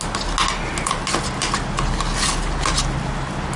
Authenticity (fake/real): real